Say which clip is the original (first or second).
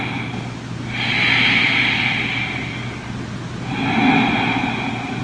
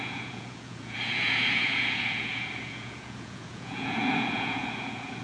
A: first